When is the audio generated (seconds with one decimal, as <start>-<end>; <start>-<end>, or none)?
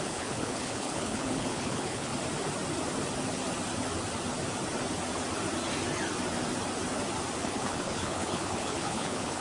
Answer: 0.0-2.1; 7.4-9.4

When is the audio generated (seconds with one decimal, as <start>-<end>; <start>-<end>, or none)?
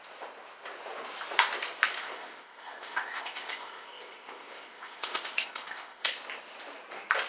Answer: 2.0-6.2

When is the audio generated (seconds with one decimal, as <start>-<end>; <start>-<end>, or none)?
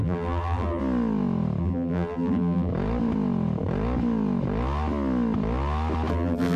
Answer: 0.0-0.8; 1.6-2.7; 6.1-6.6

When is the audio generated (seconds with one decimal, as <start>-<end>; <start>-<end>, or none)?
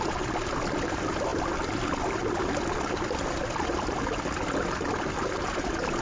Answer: none